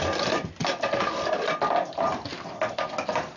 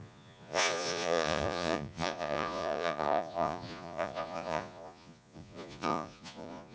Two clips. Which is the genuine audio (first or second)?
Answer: first